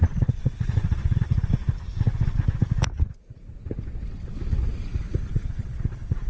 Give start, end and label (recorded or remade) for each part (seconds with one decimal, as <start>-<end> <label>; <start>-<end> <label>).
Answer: 0.0-1.5 remade; 1.5-5.3 recorded; 5.3-6.3 remade